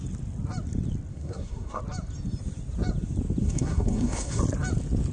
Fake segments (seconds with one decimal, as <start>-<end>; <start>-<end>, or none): 1.1-1.8; 3.4-4.4